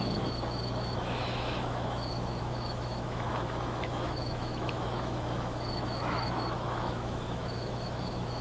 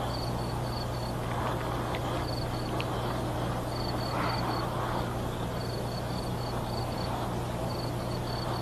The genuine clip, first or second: second